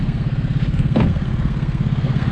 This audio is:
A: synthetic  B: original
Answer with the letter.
A